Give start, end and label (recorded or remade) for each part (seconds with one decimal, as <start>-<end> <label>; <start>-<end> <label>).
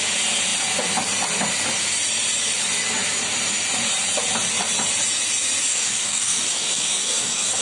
0.0-5.7 recorded; 5.7-7.6 remade